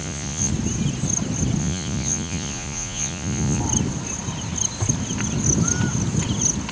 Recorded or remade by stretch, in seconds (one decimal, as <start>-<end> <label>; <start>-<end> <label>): 0.0-0.5 remade; 0.5-1.6 recorded; 1.6-3.6 remade; 3.6-6.7 recorded